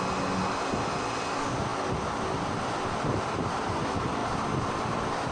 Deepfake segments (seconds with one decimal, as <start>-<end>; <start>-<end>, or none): none